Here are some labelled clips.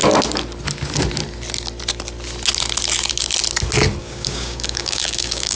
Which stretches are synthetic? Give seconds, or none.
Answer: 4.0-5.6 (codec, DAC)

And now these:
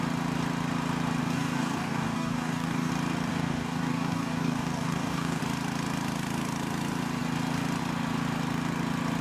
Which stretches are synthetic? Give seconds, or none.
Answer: 1.2-2.9 (codec, DAC); 3.3-5.4

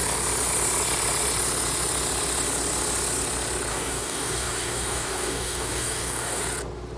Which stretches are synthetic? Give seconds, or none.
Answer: 3.7-6.4 (codec, DAC)

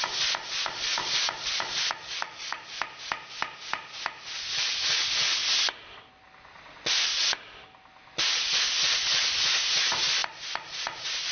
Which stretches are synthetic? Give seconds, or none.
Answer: 2.0-2.6 (codec, DAC)